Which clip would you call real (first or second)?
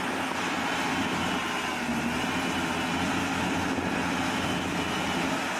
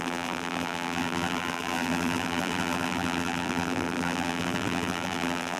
first